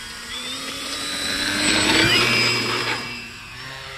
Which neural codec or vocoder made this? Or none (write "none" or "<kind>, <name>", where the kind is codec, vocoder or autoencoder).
vocoder, BigVGAN v2